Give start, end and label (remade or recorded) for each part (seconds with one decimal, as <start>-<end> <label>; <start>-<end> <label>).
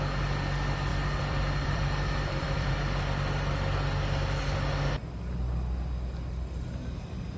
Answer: 0.0-0.9 recorded; 0.9-2.7 remade; 2.7-7.4 recorded